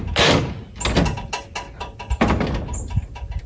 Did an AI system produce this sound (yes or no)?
no